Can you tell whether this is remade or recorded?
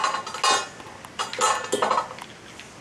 recorded